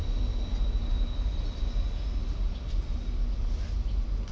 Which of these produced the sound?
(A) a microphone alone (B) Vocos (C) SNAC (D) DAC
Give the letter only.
A